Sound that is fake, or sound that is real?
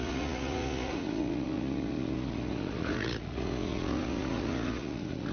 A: fake